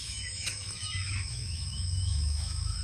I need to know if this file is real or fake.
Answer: fake